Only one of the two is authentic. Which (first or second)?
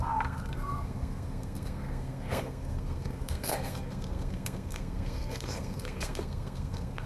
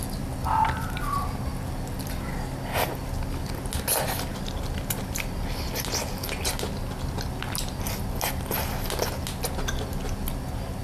second